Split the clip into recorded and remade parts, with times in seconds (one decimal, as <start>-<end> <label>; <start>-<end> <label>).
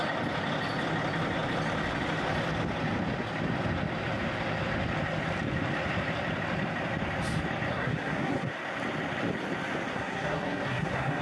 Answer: 0.0-7.7 recorded; 7.7-8.5 remade; 8.5-9.9 recorded; 9.9-11.2 remade